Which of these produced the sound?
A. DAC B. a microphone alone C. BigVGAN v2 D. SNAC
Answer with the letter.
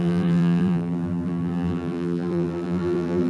C